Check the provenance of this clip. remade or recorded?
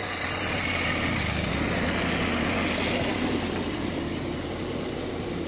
recorded